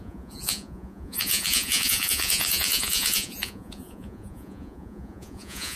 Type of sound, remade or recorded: remade